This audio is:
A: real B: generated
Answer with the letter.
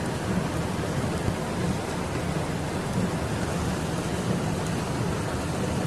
A